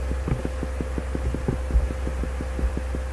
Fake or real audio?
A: real